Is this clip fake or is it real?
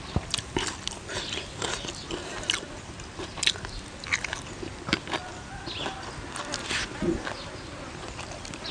real